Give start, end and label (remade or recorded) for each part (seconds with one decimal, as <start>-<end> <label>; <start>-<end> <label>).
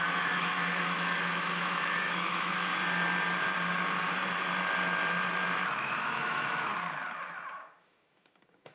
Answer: 0.0-2.7 remade; 2.7-6.0 recorded; 6.0-6.7 remade; 6.7-7.5 recorded; 7.5-8.7 remade